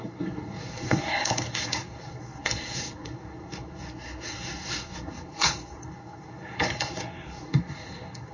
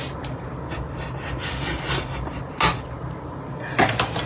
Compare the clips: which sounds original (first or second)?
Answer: second